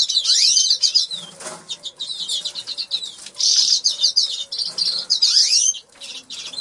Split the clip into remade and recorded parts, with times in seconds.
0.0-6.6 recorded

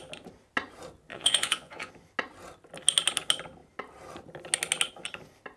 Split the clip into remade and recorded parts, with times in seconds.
0.0-1.1 recorded; 1.1-1.9 remade; 1.9-5.6 recorded

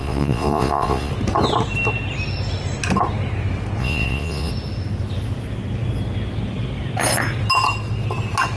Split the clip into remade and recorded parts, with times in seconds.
0.0-1.1 remade; 1.1-3.8 recorded; 3.8-4.5 remade; 4.5-8.6 recorded

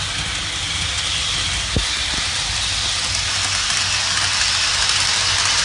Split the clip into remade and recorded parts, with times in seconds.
0.0-5.6 recorded